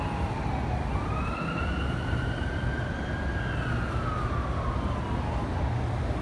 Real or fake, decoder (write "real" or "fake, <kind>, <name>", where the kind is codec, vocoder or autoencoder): real